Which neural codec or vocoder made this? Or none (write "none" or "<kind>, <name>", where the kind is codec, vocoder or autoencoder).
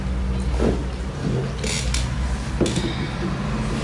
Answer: none